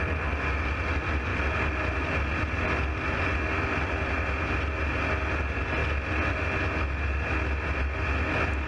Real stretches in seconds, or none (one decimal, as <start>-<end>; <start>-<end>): 0.0-8.7